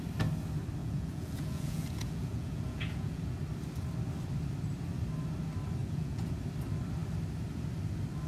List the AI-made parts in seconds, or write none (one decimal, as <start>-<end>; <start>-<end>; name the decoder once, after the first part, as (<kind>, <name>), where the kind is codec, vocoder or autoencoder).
0.8-3.2 (vocoder, Vocos); 5.8-6.3